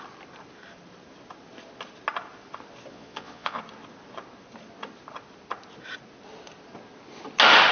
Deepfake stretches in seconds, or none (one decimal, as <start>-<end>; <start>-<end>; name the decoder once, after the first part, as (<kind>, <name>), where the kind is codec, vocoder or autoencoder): 2.9-3.6 (vocoder, Vocos)

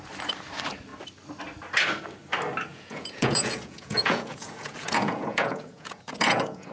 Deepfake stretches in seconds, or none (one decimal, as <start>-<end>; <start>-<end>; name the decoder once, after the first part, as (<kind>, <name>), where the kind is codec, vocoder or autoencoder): 2.7-6.7 (vocoder, Vocos)

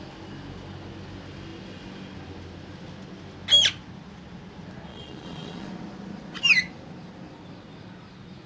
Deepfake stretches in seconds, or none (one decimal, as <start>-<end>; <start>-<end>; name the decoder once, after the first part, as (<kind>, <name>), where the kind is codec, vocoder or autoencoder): 4.9-5.7 (vocoder, Vocos)